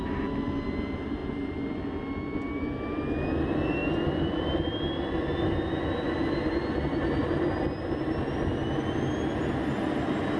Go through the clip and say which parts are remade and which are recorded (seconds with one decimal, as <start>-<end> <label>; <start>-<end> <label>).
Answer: 0.0-10.4 recorded